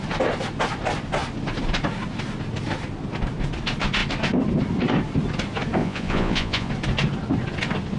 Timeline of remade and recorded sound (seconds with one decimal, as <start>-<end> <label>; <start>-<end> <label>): 0.0-5.8 recorded; 5.8-6.7 remade; 6.7-8.0 recorded